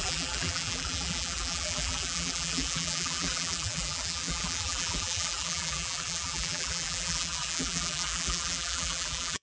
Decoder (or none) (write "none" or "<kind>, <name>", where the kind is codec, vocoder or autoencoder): vocoder, BigVGAN v2